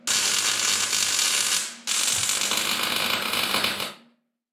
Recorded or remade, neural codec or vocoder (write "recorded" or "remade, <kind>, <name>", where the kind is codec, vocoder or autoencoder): recorded